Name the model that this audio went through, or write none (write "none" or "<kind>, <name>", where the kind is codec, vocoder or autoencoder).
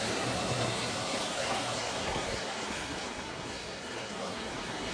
codec, SNAC